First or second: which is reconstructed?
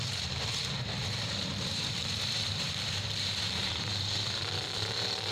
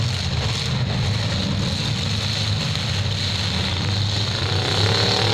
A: first